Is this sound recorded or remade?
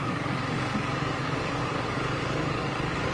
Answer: remade